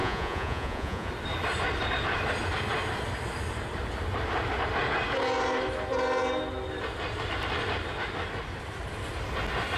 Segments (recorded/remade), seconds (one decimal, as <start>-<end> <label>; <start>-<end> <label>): 0.0-1.1 remade; 1.1-9.8 recorded